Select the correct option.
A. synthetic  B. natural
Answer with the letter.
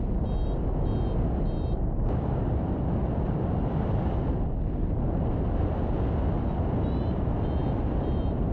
B